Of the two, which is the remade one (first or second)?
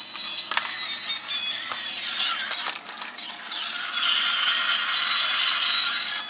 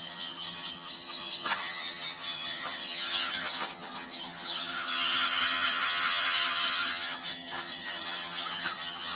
second